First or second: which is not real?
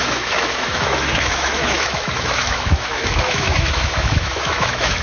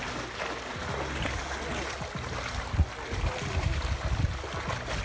first